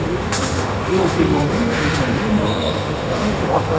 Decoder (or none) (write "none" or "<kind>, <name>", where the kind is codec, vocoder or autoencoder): autoencoder, DAC-VAE